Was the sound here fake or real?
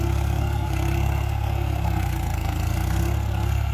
fake